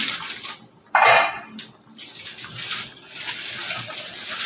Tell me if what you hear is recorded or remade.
recorded